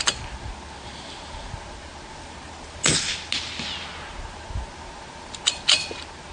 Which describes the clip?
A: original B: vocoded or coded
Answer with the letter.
A